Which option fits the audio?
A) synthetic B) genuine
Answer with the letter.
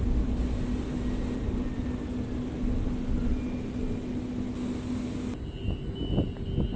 B